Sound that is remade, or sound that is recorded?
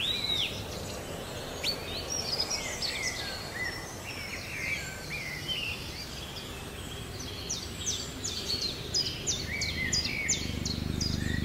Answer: recorded